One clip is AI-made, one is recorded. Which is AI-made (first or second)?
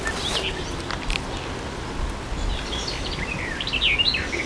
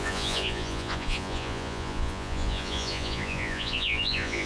second